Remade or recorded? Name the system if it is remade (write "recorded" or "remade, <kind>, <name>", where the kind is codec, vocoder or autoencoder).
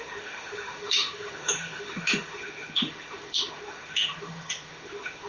remade, autoencoder, DAC-VAE